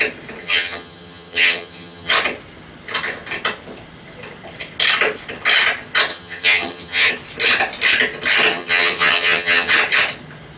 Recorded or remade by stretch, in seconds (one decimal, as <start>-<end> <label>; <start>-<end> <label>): 0.0-0.4 recorded; 0.4-2.1 remade; 2.1-6.1 recorded; 6.1-7.1 remade; 7.1-8.5 recorded; 8.5-9.7 remade; 9.7-10.6 recorded